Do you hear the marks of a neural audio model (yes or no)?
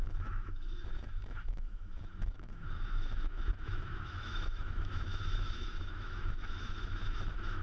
yes